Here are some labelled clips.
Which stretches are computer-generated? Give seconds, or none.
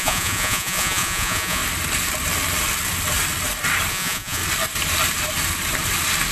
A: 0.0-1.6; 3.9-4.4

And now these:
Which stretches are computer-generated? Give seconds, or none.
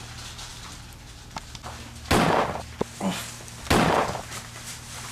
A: none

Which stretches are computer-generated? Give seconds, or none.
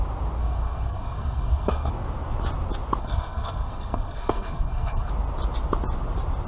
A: 0.4-1.9; 3.0-5.1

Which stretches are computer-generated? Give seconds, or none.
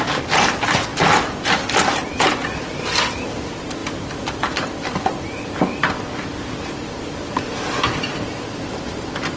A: none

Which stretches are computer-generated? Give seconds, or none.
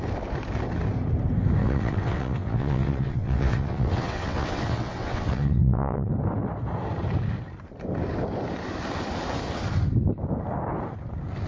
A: 1.6-6.1